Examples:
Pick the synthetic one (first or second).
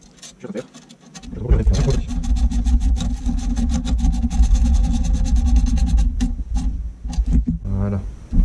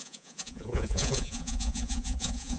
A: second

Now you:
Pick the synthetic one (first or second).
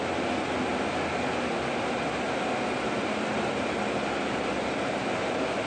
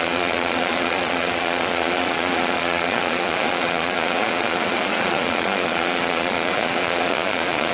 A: second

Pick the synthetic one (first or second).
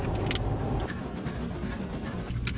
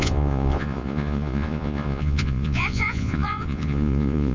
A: second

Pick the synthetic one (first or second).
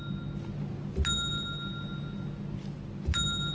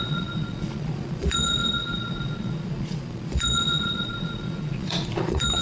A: second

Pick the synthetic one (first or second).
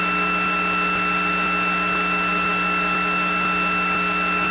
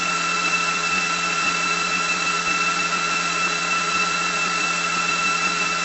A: second